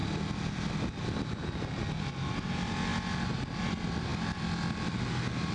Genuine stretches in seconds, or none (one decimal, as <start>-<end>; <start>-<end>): 0.0-5.5